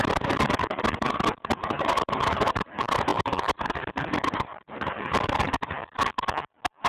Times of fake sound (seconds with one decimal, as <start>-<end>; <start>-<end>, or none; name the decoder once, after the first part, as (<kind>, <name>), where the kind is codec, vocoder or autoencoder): 0.0-5.8 (vocoder, BigVGAN v2)